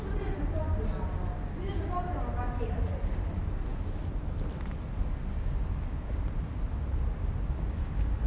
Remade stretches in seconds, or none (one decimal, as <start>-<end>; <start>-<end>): 5.3-6.2